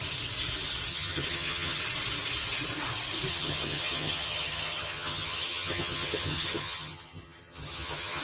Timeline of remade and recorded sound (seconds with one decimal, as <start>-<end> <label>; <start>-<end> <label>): 0.0-0.9 recorded; 0.9-1.8 remade; 1.8-3.3 recorded; 3.3-8.2 remade